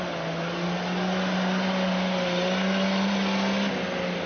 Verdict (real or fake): real